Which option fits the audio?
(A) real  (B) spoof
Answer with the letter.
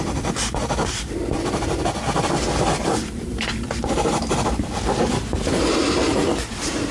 A